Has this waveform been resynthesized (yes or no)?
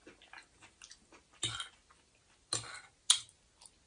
no